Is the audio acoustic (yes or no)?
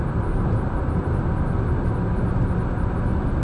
yes